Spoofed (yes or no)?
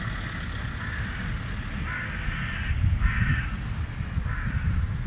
no